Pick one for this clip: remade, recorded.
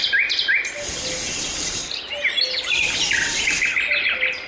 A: recorded